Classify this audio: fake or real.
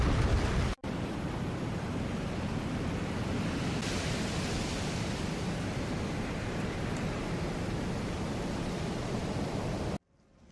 real